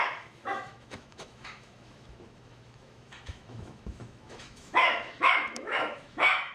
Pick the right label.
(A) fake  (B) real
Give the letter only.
A